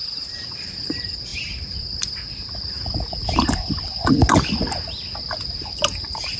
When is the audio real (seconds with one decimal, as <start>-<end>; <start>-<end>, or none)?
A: 0.0-6.4